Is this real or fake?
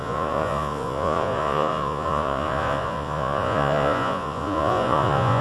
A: fake